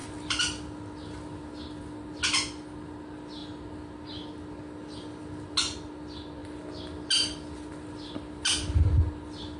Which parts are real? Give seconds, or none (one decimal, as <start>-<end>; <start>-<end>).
0.0-9.6